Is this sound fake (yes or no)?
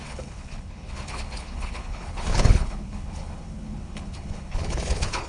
yes